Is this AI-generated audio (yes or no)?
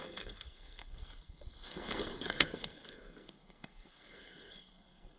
yes